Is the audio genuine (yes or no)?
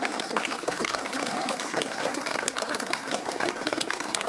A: no